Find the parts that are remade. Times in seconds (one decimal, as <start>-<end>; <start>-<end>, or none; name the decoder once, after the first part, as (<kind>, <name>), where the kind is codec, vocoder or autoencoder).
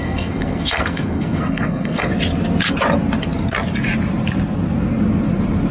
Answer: 0.0-2.1 (codec, SNAC)